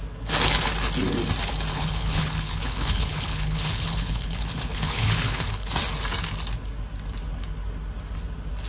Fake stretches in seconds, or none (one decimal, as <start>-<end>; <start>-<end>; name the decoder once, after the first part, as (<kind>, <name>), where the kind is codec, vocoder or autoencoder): 1.7-5.7 (codec, HILCodec)